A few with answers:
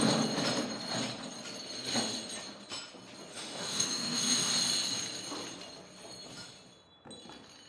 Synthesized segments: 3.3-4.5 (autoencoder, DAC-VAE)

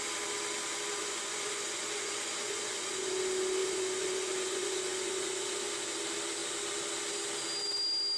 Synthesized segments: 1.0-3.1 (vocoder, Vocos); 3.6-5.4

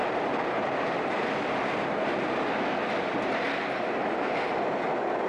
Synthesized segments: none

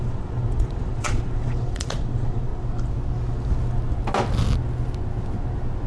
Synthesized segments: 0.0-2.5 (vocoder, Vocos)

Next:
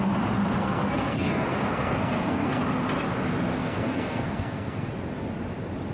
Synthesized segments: 0.6-2.6 (codec, SNAC); 3.6-4.9